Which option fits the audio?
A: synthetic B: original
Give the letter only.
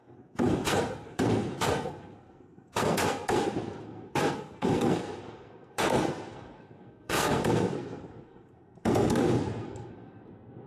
A